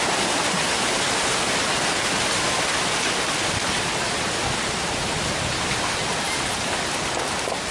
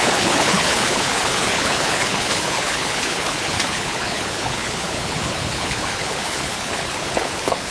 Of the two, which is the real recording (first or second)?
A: first